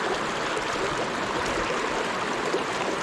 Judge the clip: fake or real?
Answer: real